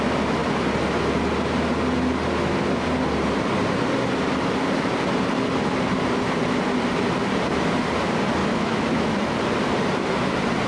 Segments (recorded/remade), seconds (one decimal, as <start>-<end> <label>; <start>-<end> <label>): 0.0-8.4 recorded; 8.4-9.3 remade; 9.3-10.7 recorded